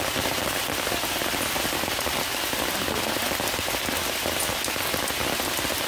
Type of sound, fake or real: real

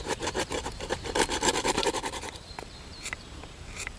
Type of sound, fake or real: fake